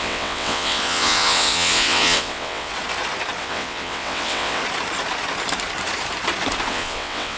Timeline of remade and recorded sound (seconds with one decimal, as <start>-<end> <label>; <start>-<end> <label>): 0.0-2.7 remade; 2.7-3.4 recorded; 3.4-4.6 remade; 4.6-6.7 recorded; 6.7-7.4 remade